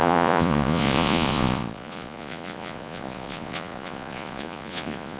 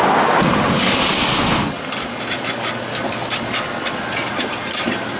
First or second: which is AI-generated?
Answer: first